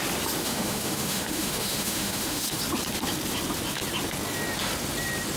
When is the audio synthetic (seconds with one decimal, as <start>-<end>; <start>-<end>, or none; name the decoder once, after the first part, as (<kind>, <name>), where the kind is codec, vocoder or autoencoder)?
0.4-2.6 (autoencoder, DAC-VAE)